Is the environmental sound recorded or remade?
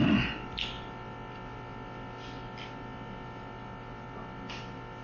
recorded